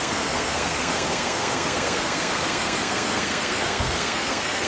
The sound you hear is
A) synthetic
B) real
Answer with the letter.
A